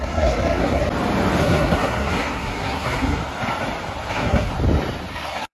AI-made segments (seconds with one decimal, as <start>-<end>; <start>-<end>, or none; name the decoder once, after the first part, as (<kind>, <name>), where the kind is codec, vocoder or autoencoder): 0.0-0.8 (codec, SNAC); 1.4-3.2; 4.1-4.5; 5.1-5.5